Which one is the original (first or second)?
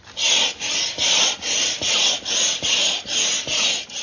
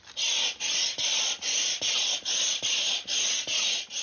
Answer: first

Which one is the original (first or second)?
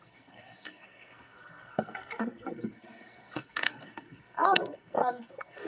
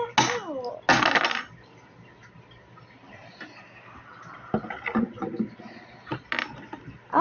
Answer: second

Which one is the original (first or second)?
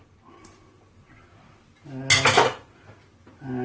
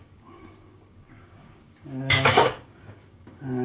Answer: first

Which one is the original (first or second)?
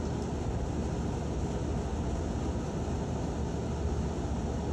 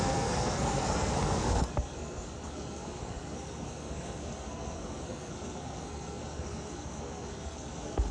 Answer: first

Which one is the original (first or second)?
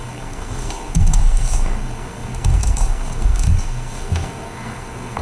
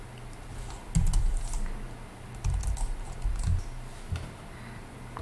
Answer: second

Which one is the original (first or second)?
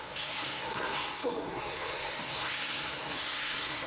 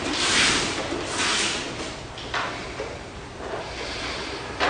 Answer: second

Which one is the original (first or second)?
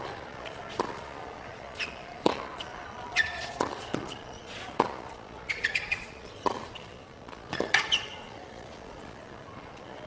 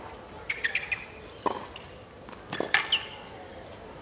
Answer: second